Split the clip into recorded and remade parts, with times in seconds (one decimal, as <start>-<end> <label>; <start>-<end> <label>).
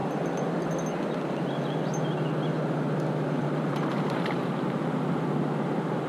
0.0-3.4 recorded; 3.4-4.8 remade; 4.8-6.1 recorded